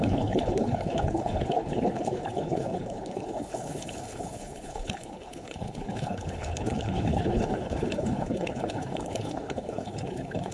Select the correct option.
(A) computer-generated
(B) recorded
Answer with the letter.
A